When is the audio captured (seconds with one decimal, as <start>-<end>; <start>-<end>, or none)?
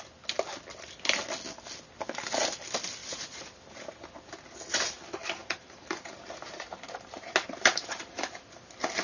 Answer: 0.0-3.0; 3.9-5.4; 8.4-9.0